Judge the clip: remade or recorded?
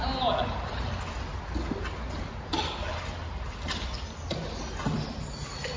recorded